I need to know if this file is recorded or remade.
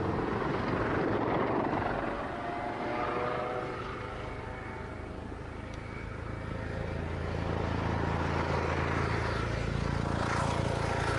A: recorded